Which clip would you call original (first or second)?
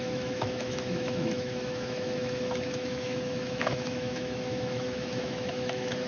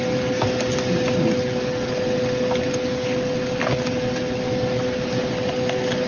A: second